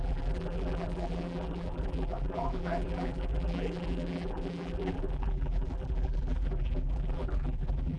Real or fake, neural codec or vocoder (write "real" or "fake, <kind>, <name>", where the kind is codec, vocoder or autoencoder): fake, vocoder, BigVGAN v2